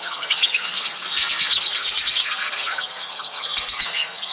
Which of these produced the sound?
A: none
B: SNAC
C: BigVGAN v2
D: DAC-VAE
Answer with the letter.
B